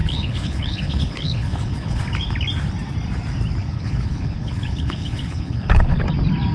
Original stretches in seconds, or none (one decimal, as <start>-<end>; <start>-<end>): 2.0-3.6; 6.0-6.5